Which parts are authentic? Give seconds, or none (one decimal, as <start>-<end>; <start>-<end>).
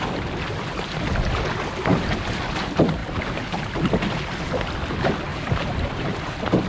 0.0-5.3; 5.9-6.7